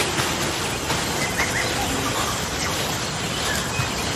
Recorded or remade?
recorded